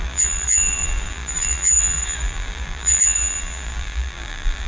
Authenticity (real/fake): fake